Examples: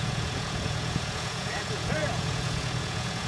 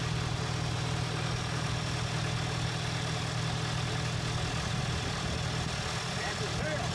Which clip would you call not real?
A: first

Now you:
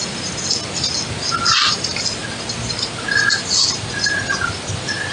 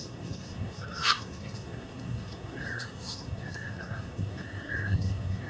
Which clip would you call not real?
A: second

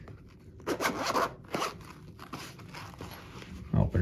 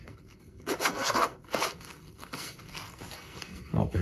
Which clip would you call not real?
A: second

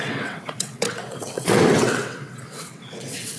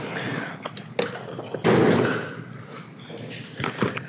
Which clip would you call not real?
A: first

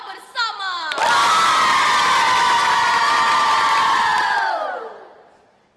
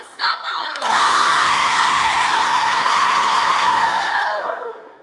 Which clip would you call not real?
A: second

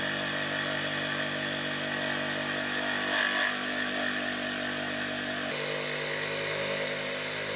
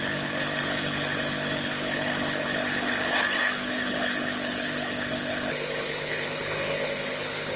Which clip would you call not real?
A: second